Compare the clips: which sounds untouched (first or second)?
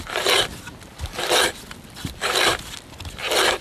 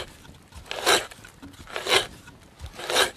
second